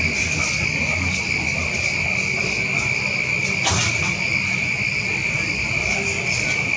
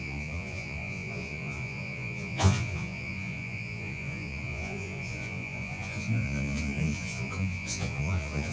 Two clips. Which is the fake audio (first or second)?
second